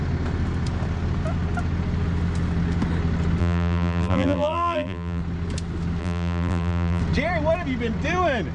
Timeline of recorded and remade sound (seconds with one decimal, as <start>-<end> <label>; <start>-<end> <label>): 0.0-3.4 recorded; 3.4-5.2 remade; 5.2-6.0 recorded; 6.0-7.0 remade; 7.0-8.5 recorded